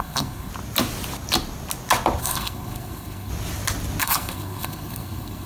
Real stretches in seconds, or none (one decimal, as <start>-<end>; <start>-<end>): 0.5-2.2; 3.3-4.0